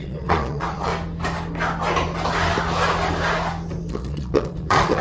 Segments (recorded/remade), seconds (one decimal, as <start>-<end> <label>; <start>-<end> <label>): 0.0-0.9 remade; 0.9-3.9 recorded; 3.9-5.0 remade